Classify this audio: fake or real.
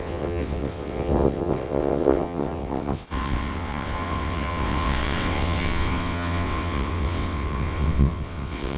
fake